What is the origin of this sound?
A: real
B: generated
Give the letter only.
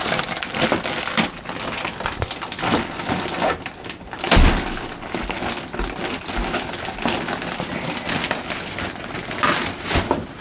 A